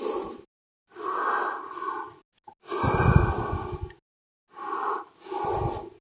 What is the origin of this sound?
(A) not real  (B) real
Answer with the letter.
B